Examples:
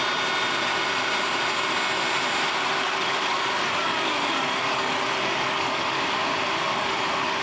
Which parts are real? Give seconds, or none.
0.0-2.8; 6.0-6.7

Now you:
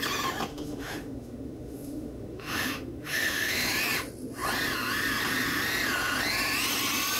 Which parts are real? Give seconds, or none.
0.0-0.5; 3.7-7.2

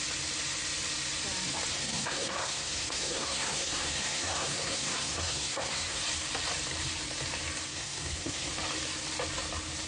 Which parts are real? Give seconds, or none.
0.0-1.7; 6.0-7.7; 8.5-9.9

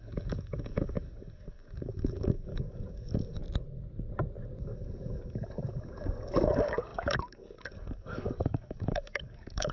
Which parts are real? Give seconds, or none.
3.4-4.6

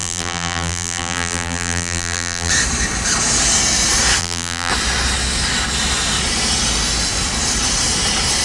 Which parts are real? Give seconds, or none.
2.5-4.2; 4.7-8.4

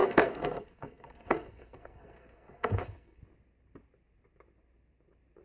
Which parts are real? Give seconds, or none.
3.2-5.4

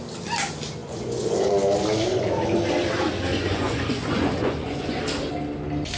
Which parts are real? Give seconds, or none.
0.0-0.8; 1.5-3.3; 5.0-6.0

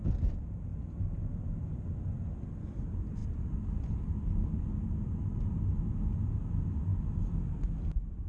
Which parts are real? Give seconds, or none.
0.0-8.3